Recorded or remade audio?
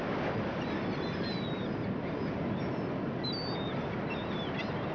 recorded